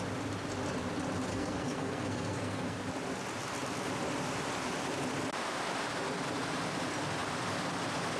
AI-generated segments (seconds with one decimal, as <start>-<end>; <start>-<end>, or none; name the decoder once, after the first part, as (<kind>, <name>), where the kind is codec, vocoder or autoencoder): 1.3-2.8 (codec, SNAC)